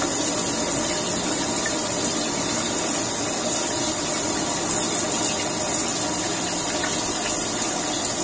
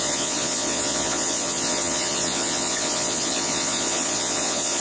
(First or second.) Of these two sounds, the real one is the first